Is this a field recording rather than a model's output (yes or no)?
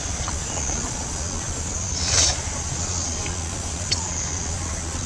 no